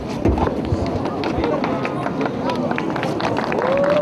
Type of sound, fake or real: real